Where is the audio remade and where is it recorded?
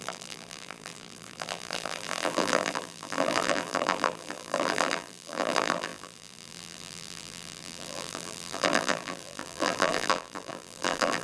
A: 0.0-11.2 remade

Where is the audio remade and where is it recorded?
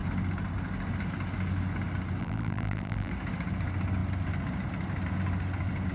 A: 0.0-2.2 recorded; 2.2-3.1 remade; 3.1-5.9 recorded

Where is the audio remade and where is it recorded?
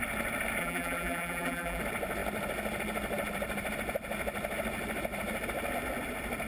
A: 0.0-0.6 recorded; 0.6-1.8 remade; 1.8-6.5 recorded